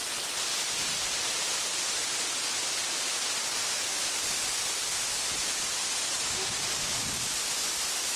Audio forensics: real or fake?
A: real